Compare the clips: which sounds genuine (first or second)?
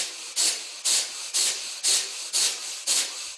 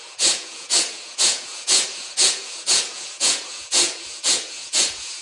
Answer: first